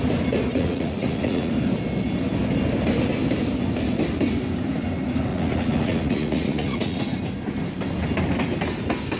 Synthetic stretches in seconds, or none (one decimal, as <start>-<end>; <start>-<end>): 0.5-1.5; 5.3-7.0